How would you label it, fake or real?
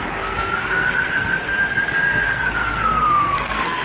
fake